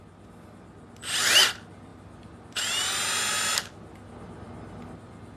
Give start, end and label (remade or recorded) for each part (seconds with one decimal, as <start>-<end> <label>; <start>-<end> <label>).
0.0-5.4 recorded